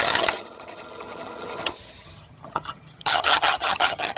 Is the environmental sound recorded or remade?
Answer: remade